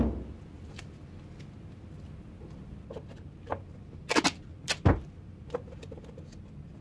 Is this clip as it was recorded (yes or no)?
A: yes